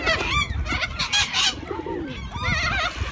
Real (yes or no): yes